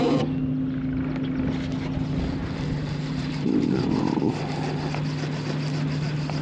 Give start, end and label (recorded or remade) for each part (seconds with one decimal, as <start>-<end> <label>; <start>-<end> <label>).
0.0-2.4 recorded; 2.4-4.4 remade; 4.4-6.4 recorded